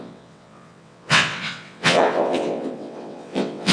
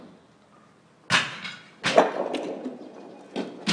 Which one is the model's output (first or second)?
first